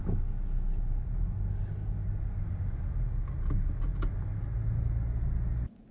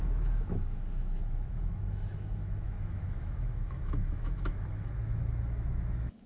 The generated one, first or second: second